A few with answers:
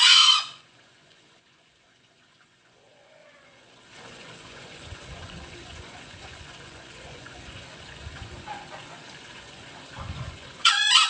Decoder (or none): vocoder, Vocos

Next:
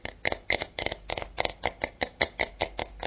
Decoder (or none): none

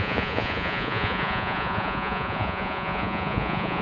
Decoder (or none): vocoder, Vocos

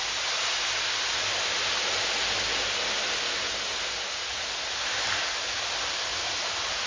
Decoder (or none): none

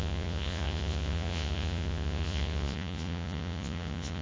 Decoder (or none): vocoder, Vocos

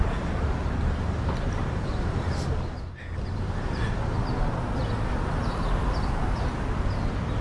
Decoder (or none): none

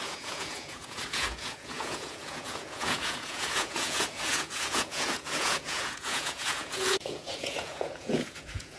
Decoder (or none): vocoder, Vocos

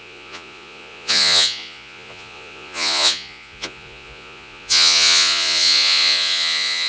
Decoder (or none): vocoder, Vocos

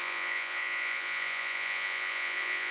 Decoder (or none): vocoder, Vocos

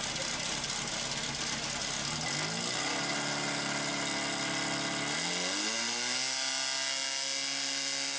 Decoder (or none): none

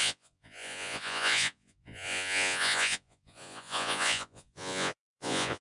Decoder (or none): vocoder, Vocos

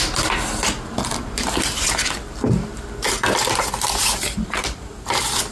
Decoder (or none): none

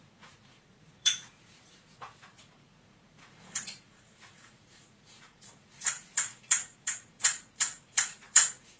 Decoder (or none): vocoder, Vocos